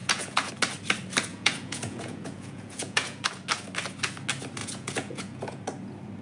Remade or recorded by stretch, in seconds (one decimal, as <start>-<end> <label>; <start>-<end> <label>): 0.0-0.5 remade; 0.5-1.3 recorded; 1.3-3.3 remade; 3.3-4.6 recorded; 4.6-5.6 remade; 5.6-6.2 recorded